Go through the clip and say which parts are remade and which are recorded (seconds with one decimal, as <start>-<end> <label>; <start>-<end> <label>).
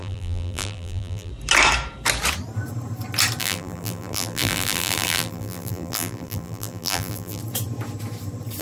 0.0-1.3 remade; 1.3-3.4 recorded; 3.4-7.4 remade; 7.4-8.6 recorded